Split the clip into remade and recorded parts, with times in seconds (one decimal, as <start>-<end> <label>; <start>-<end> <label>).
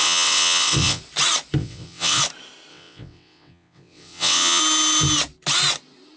0.0-1.0 remade; 1.0-1.6 recorded; 1.6-2.2 remade; 2.2-2.7 recorded; 2.7-4.6 remade; 4.6-6.2 recorded